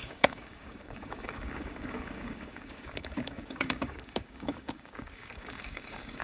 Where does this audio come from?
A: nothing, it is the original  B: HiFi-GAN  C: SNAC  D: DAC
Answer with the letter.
D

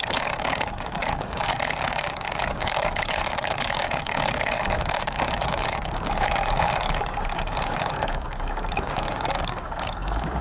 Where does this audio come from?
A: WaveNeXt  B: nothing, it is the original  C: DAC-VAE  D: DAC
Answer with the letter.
D